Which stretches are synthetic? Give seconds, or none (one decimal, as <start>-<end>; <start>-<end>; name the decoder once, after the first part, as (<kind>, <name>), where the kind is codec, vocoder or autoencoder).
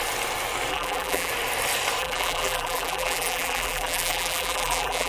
0.7-1.3 (vocoder, BigVGAN v2); 2.0-5.1